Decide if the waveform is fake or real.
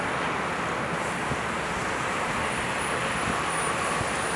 real